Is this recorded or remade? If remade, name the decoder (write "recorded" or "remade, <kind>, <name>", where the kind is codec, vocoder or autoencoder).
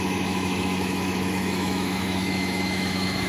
remade, autoencoder, DAC-VAE